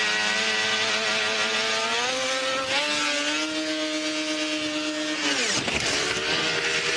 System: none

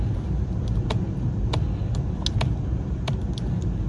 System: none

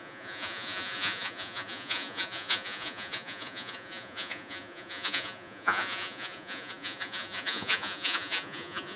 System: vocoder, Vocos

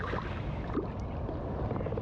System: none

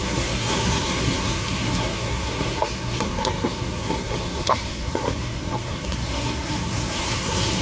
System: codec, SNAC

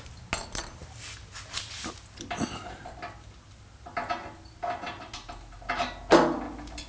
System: none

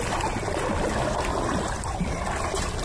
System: none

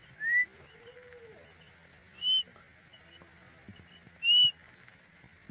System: none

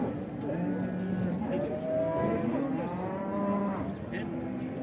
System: none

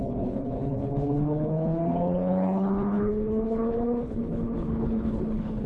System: codec, HILCodec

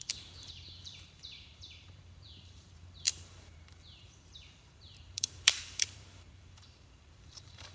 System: vocoder, BigVGAN v2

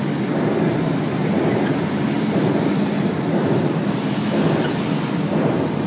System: none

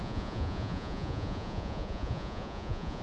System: vocoder, Vocos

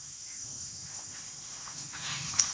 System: autoencoder, DAC-VAE